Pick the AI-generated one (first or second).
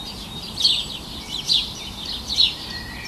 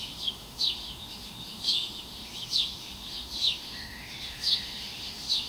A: second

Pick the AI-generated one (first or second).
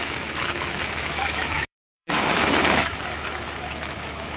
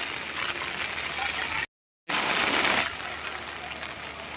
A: first